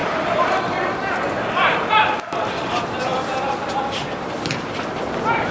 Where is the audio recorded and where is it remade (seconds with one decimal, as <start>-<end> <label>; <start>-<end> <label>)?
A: 0.0-2.0 remade; 2.0-3.1 recorded; 3.1-5.1 remade; 5.1-5.5 recorded

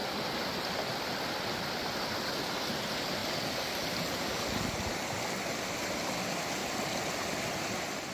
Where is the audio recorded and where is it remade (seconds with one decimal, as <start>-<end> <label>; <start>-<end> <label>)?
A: 0.0-8.1 recorded

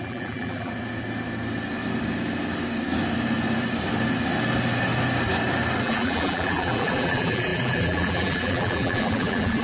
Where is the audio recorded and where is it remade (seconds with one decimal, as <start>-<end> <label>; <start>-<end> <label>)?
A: 0.0-0.7 remade; 0.7-5.8 recorded; 5.8-9.6 remade

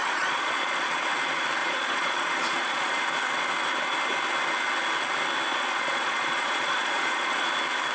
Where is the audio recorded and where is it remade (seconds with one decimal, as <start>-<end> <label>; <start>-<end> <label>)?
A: 0.0-1.0 remade; 1.0-1.6 recorded; 1.6-3.0 remade; 3.0-5.5 recorded; 5.5-7.5 remade; 7.5-7.9 recorded

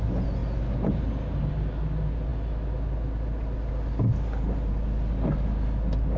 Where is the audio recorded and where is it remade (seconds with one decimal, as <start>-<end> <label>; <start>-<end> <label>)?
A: 0.0-6.2 recorded

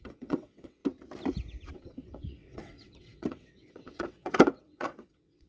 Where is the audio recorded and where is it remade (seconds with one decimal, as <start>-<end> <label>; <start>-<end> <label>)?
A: 0.0-0.8 remade; 0.8-1.7 recorded; 1.7-5.5 remade